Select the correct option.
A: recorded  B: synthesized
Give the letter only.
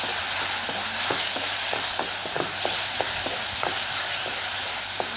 A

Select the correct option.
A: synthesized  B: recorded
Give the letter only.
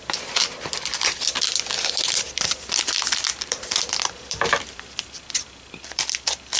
A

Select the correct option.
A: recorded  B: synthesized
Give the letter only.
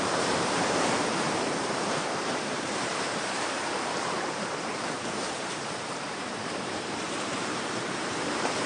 B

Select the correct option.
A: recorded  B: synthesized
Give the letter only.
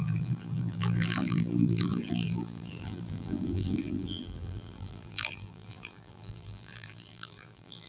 B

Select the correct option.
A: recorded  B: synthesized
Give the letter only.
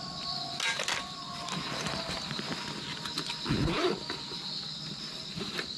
A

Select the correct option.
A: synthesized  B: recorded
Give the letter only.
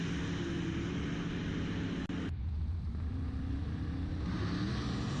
B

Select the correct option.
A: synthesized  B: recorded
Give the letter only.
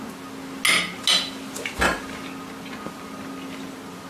B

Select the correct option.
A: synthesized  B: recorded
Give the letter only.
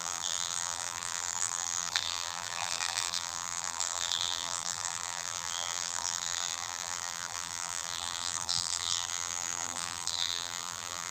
A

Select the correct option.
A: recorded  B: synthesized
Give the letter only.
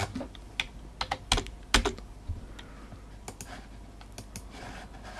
A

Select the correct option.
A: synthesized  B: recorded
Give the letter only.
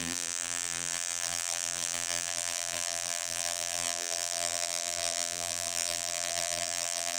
A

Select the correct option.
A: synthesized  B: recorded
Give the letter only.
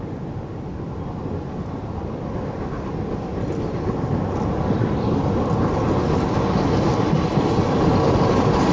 B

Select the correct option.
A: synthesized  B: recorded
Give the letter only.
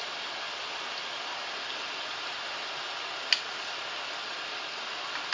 B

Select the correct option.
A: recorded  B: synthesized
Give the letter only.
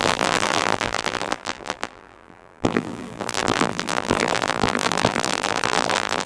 B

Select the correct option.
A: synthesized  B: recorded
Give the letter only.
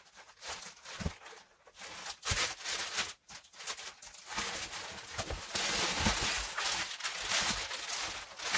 B